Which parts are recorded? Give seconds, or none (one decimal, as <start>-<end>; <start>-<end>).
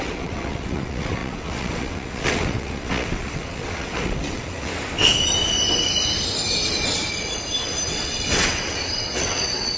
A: 4.7-7.9